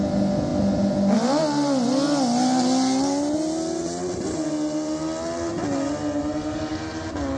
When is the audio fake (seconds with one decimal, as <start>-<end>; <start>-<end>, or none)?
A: none